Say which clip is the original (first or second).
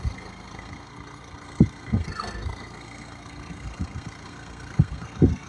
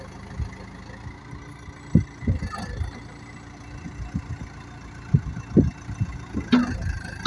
second